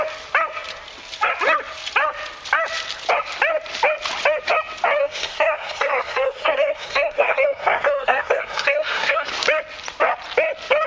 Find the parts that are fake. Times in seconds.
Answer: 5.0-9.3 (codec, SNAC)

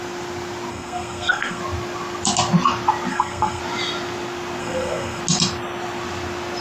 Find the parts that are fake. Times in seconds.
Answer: 0.7-1.6 (codec, SNAC); 3.1-3.6; 4.6-5.2

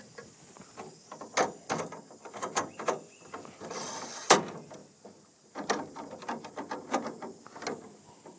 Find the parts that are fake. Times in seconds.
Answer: none

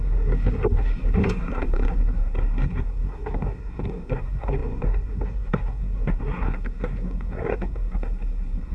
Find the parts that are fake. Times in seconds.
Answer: 0.0-8.7 (codec, SNAC)